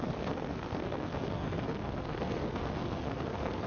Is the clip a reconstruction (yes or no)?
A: yes